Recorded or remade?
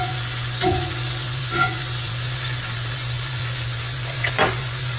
remade